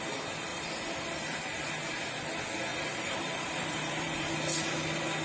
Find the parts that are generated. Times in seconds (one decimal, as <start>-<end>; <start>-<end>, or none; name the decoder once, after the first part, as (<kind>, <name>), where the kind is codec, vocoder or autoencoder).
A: 0.5-1.7 (vocoder, BigVGAN v2); 2.7-4.3